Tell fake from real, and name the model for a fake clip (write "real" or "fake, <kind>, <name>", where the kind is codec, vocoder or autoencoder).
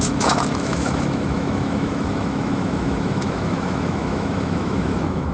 fake, autoencoder, DAC-VAE